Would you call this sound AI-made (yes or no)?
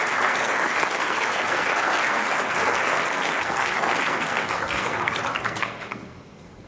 yes